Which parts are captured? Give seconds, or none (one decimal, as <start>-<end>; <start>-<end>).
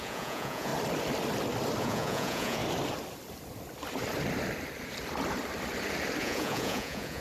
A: 0.7-1.8; 2.6-6.2